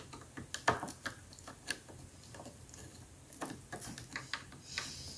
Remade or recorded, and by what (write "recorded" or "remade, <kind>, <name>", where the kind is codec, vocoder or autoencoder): recorded